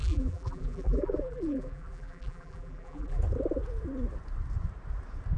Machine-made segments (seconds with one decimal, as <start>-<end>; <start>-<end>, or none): 0.0-3.2